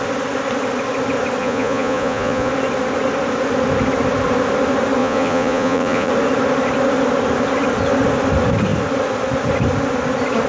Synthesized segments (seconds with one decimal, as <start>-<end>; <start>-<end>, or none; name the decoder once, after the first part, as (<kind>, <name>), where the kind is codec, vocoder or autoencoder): 1.4-2.5 (vocoder, Vocos); 5.0-6.1